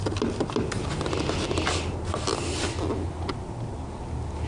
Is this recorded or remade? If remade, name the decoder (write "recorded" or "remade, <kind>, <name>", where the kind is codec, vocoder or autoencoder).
recorded